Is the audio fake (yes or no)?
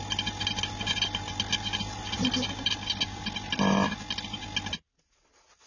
no